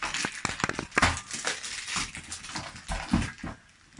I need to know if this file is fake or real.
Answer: real